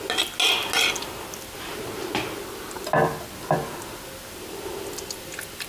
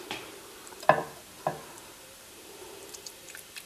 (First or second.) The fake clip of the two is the second